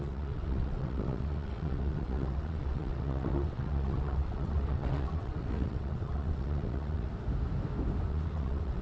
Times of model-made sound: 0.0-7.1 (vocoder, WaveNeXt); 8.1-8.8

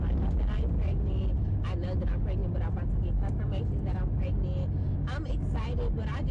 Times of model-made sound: none

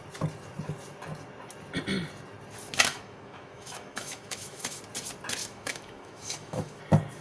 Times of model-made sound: 2.9-4.8 (autoencoder, DAC-VAE); 5.4-6.8

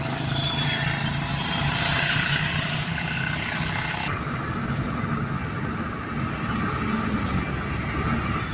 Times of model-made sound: 1.3-3.6 (vocoder, BigVGAN v2)

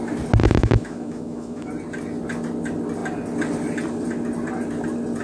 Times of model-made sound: 0.4-1.7 (autoencoder, DAC-VAE)

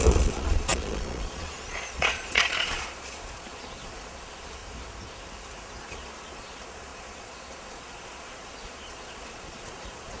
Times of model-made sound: 0.0-4.6 (vocoder, Vocos); 5.8-10.2

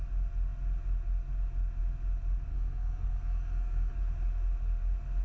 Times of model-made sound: 2.5-3.9 (codec, SNAC)

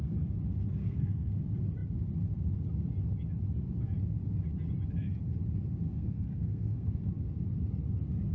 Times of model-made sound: 0.8-1.4 (codec, SNAC); 5.9-7.1